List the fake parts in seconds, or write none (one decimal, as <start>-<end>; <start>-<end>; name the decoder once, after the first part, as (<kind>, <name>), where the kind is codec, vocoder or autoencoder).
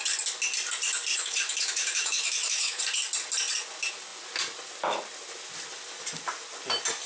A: 1.1-2.8 (autoencoder, DAC-VAE)